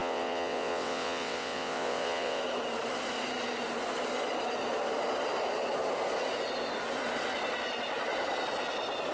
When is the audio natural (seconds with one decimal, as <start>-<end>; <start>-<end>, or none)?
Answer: 2.4-9.1